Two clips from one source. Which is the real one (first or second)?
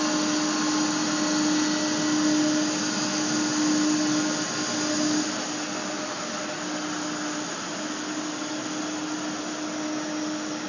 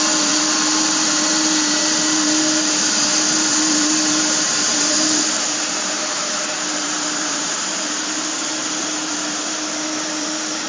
first